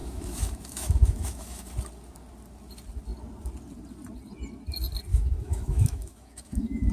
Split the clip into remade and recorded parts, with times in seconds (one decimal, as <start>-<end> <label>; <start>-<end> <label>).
0.0-1.7 remade; 1.7-5.1 recorded; 5.1-6.9 remade

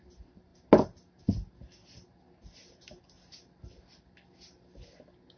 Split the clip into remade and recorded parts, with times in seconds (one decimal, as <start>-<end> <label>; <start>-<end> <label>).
0.0-5.4 recorded

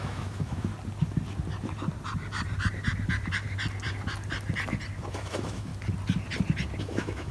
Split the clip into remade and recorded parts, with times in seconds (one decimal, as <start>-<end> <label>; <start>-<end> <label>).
0.0-0.7 remade; 0.7-5.1 recorded; 5.1-5.7 remade; 5.7-6.8 recorded; 6.8-7.3 remade

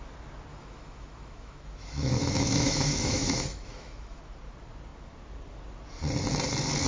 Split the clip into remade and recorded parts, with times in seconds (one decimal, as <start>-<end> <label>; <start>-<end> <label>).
0.0-0.5 recorded; 0.5-4.2 remade; 4.2-6.9 recorded

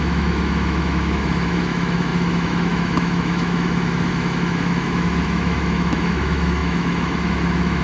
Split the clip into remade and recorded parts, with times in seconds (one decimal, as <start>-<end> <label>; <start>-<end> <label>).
0.0-7.8 remade

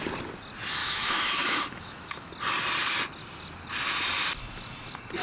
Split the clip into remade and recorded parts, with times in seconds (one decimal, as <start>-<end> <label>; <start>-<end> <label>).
0.0-0.8 recorded; 0.8-2.3 remade; 2.3-5.2 recorded

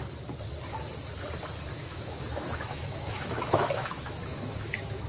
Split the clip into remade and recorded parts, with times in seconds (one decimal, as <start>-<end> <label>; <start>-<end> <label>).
0.0-1.7 recorded; 1.7-5.1 remade